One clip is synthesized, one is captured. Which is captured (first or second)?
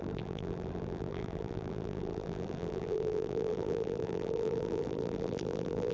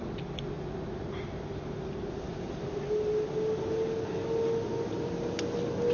second